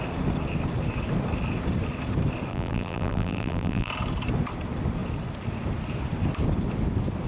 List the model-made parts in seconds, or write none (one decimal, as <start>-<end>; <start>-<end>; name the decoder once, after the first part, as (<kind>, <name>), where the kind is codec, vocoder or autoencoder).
2.5-3.9 (vocoder, BigVGAN v2)